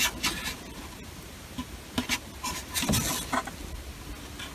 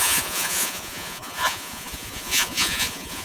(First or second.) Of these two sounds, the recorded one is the first